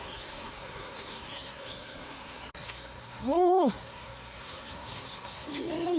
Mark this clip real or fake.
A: fake